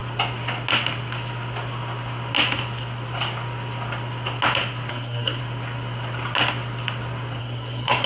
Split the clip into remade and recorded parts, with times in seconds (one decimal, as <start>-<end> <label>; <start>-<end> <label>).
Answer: 0.0-4.9 recorded; 4.9-5.4 remade; 5.4-7.4 recorded; 7.4-8.1 remade